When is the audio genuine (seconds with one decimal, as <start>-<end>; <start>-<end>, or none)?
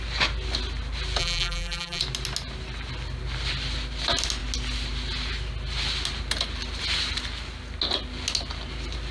0.0-1.2; 2.0-9.1